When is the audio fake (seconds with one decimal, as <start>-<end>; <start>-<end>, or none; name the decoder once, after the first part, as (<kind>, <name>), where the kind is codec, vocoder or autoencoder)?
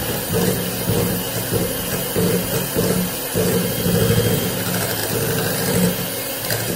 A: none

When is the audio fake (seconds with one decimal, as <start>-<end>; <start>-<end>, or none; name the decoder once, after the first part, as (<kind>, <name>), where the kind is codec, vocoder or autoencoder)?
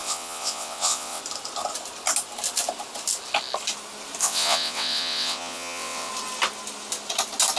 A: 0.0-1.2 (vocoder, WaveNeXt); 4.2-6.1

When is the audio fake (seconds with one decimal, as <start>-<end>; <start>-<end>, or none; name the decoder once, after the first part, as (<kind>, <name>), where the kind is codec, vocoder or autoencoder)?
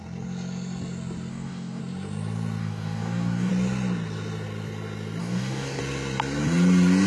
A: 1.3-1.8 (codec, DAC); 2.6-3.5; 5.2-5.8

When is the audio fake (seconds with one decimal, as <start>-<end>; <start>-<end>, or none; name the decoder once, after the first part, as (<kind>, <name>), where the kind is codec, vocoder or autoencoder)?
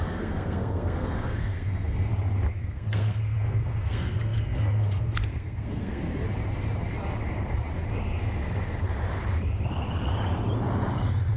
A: 0.0-2.1 (codec, SNAC); 2.6-6.1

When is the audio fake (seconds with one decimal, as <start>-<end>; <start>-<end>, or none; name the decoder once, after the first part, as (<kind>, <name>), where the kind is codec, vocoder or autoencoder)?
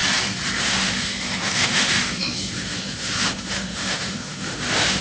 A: 0.6-5.0 (autoencoder, DAC-VAE)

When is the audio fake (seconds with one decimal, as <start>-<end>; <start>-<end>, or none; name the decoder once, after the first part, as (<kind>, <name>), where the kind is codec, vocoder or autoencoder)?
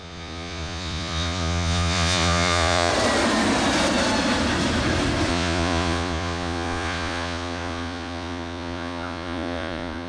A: 0.0-2.9 (vocoder, Vocos); 5.3-10.1